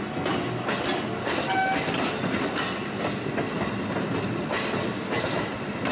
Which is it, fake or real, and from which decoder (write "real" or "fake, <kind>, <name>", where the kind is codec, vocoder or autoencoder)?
real